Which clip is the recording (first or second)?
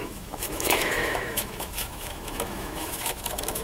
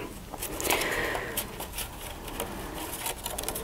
second